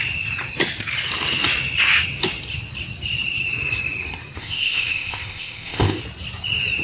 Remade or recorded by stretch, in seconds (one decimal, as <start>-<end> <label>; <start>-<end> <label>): 0.0-4.4 recorded; 4.4-6.0 remade; 6.0-6.8 recorded